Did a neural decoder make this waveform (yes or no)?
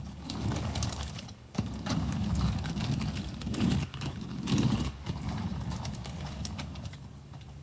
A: yes